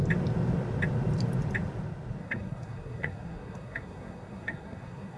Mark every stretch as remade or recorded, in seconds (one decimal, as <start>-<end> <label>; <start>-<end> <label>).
0.0-2.2 recorded; 2.2-5.2 remade